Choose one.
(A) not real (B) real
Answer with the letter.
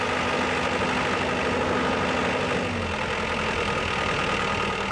B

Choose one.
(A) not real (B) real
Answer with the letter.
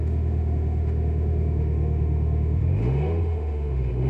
A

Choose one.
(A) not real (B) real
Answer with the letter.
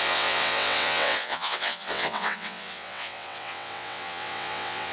A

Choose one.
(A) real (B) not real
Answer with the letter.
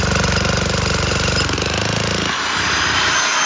A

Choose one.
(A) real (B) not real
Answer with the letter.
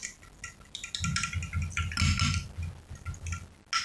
A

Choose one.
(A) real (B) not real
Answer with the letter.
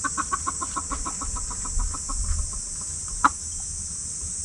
A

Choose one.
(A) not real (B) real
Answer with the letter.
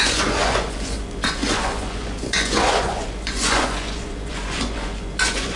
A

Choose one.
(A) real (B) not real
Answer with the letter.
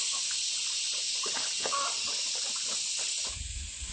A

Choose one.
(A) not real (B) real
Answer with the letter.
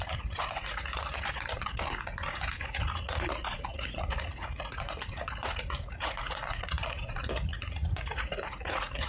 A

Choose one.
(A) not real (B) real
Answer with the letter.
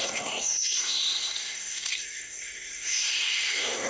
A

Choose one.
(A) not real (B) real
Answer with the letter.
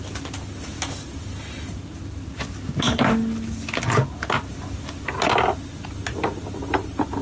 B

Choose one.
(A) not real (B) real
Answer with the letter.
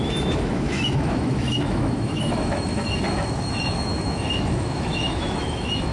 A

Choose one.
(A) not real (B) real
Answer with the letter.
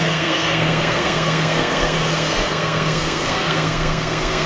A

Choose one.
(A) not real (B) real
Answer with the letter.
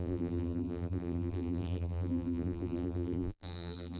A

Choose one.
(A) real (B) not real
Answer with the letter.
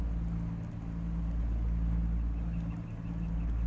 A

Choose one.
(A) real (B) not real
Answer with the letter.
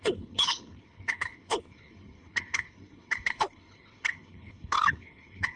B